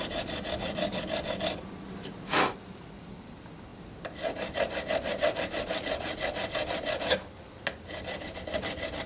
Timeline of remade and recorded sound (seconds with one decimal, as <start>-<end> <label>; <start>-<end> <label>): 0.0-9.1 recorded